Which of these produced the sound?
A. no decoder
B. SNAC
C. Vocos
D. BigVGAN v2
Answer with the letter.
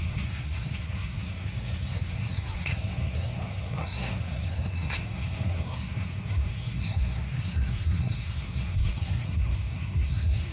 B